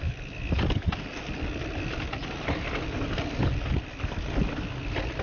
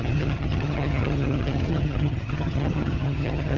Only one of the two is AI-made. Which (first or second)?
second